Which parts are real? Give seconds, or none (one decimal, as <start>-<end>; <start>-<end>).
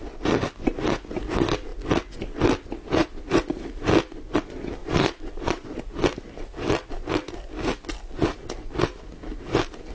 0.0-4.8; 5.8-9.9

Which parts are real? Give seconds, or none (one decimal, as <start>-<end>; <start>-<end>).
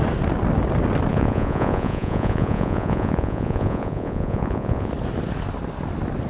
0.0-1.1; 4.9-6.3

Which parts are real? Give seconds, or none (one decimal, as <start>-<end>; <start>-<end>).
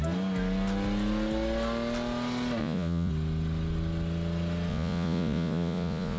0.0-2.6; 3.1-4.7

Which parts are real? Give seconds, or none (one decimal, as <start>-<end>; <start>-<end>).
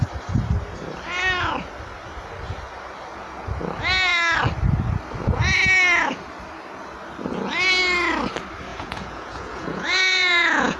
0.0-8.7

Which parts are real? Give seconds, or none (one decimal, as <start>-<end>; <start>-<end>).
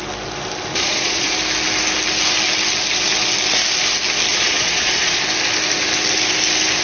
0.0-0.7; 1.3-4.3; 5.2-6.8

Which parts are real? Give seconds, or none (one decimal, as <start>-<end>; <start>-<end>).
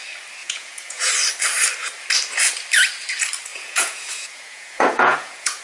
0.0-0.4; 1.1-3.5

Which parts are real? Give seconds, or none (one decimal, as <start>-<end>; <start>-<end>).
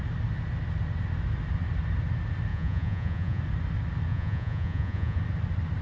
0.0-2.5; 3.4-4.1; 5.2-5.8